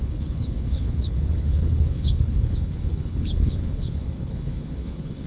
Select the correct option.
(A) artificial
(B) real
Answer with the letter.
A